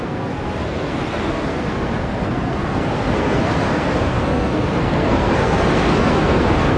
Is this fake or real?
fake